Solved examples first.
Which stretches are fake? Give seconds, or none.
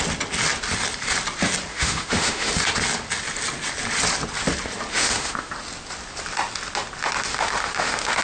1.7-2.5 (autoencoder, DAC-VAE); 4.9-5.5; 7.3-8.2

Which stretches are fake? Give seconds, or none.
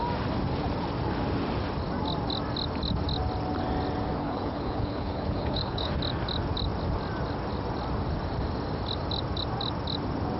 4.2-5.9 (codec, HILCodec)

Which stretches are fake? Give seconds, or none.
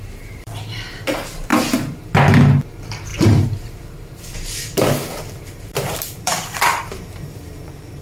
0.0-1.5 (vocoder, BigVGAN v2); 2.7-8.0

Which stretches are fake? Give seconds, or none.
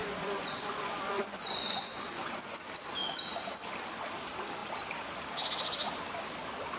0.0-2.6 (vocoder, Vocos)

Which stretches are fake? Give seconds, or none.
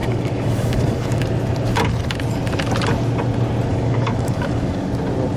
0.0-1.2 (codec, DAC); 3.7-4.9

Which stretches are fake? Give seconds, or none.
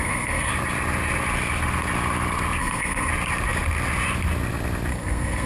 0.0-0.5 (codec, SNAC); 2.6-3.1; 4.9-5.5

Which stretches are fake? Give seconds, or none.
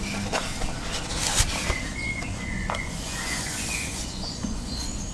1.9-5.1 (vocoder, Vocos)